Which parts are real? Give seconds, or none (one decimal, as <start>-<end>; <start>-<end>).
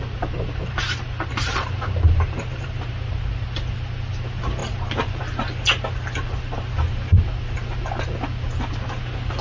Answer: 0.0-0.6; 2.9-4.6; 5.2-9.4